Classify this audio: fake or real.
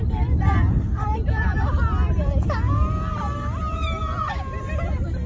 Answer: real